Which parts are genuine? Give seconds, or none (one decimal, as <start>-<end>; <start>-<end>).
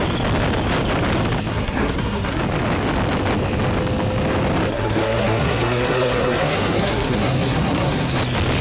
0.0-1.5; 2.4-4.7; 8.2-8.6